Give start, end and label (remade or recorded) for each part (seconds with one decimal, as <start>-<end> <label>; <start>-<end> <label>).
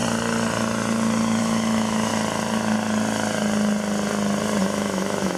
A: 0.0-1.4 recorded; 1.4-2.1 remade; 2.1-4.6 recorded; 4.6-5.4 remade